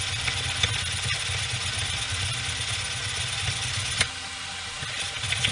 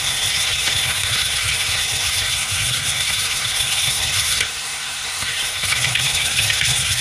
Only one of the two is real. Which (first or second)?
first